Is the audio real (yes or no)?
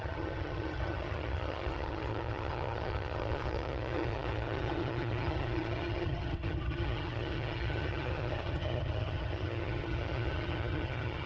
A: no